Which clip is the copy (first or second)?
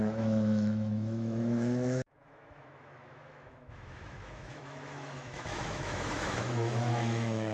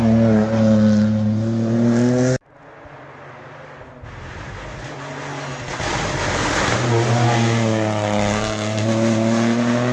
first